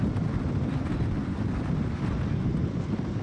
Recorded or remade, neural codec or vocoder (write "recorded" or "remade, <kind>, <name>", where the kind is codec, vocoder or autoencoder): recorded